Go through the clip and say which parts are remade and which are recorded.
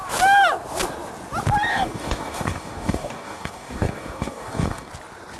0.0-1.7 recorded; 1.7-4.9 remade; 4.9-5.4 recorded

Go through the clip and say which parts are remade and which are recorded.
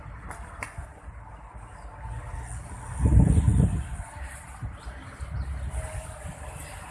0.0-6.9 recorded